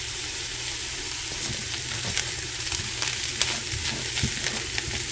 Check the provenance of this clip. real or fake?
real